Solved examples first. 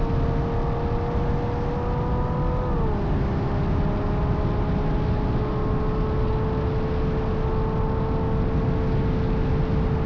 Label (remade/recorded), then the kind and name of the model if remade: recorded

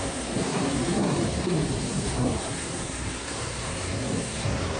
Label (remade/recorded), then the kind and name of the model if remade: remade, codec, SNAC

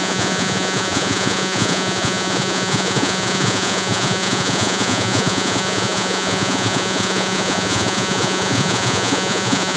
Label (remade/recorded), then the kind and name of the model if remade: remade, vocoder, Vocos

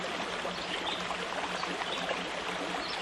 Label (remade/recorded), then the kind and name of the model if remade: recorded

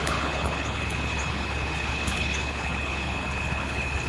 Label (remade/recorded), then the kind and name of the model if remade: remade, codec, HILCodec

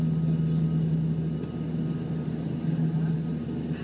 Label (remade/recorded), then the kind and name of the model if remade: recorded